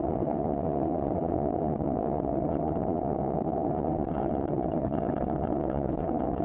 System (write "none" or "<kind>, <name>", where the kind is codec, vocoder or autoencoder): vocoder, WaveNeXt